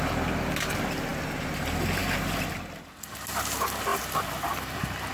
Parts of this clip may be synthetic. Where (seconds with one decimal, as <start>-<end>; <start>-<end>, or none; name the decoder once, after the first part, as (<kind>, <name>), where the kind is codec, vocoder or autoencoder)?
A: none